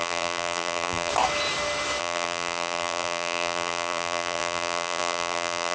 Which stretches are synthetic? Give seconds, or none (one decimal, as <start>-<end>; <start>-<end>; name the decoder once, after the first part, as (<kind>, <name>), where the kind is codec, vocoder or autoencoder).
0.0-1.1 (vocoder, BigVGAN v2); 2.0-5.7